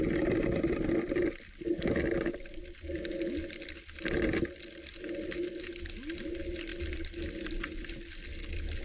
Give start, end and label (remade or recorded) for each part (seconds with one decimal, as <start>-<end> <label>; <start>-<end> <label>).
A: 0.0-8.8 recorded